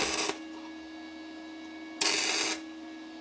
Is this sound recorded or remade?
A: recorded